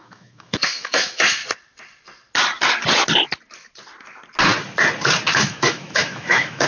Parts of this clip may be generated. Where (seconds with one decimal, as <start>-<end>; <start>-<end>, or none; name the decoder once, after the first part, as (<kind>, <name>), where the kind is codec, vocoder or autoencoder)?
0.0-1.4 (autoencoder, DAC-VAE); 5.4-6.7